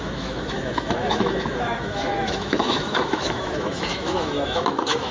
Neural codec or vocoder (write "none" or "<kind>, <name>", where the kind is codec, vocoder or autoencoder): autoencoder, DAC-VAE